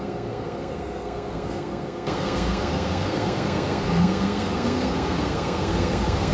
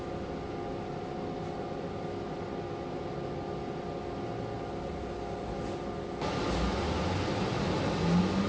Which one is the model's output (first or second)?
first